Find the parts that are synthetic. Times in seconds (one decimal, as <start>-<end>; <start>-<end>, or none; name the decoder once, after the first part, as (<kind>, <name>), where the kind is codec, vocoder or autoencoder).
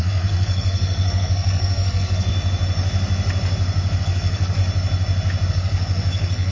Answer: 0.0-2.3 (codec, SNAC); 4.0-4.6; 5.5-6.5